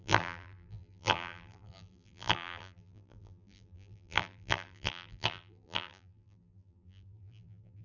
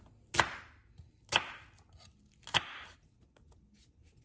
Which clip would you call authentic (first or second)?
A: second